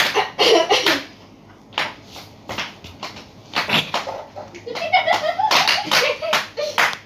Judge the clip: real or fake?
real